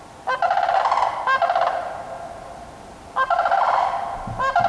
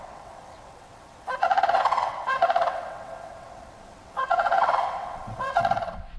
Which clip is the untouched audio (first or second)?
first